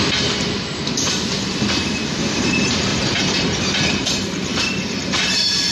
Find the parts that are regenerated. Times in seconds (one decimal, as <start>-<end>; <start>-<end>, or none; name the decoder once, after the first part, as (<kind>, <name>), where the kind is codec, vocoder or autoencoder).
0.9-2.0 (vocoder, BigVGAN v2); 2.5-2.9; 3.9-5.7